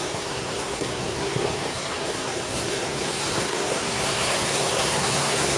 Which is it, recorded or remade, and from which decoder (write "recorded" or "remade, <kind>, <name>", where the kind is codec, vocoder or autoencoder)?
remade, codec, SNAC